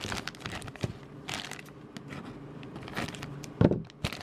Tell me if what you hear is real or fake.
real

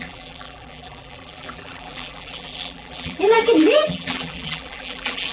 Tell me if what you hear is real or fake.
fake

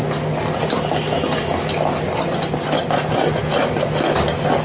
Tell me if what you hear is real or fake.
real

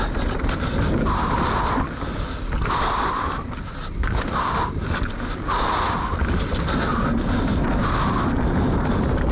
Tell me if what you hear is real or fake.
real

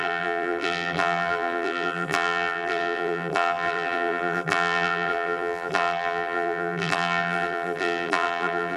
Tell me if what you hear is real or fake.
fake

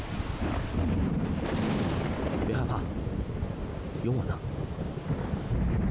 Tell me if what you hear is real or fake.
fake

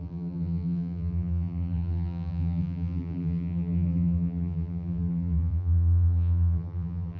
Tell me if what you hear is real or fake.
fake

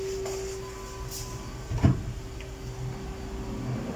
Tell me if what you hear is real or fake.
real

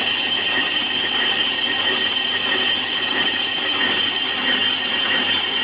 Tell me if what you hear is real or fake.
real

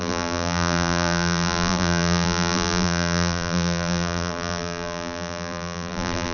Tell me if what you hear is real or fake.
fake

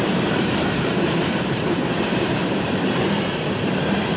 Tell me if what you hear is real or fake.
fake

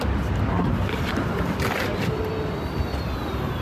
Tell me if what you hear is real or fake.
fake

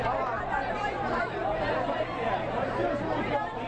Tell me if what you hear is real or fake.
fake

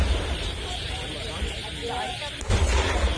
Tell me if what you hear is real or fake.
real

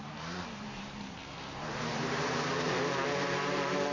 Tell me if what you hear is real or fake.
fake